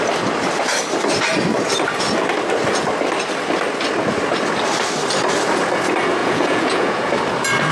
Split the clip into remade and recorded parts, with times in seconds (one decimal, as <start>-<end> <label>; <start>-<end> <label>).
0.0-6.2 recorded; 6.2-7.1 remade; 7.1-7.7 recorded